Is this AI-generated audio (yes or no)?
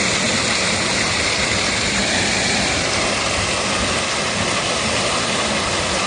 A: no